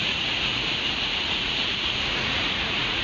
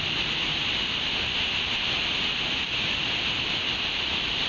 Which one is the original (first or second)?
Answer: second